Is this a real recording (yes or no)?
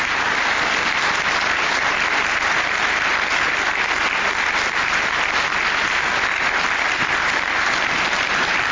yes